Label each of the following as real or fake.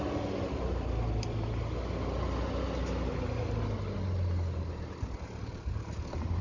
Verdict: real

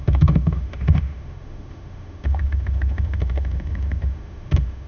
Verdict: fake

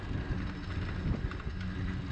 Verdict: real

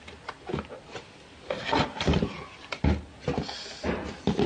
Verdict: real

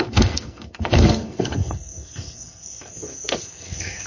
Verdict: fake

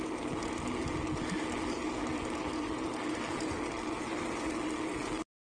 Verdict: real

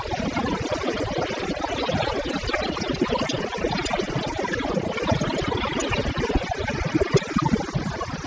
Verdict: real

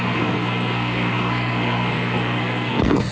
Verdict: fake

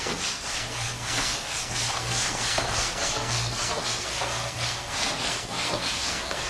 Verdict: fake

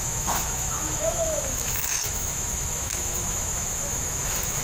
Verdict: fake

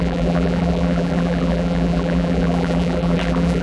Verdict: fake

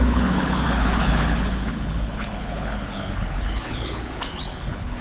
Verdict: fake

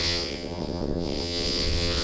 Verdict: fake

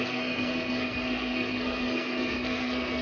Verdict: fake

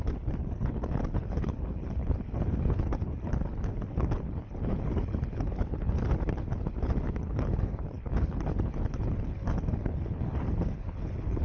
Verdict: fake